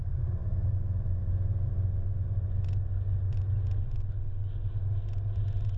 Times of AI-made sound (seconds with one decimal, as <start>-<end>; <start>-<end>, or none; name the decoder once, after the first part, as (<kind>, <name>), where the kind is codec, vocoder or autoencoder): none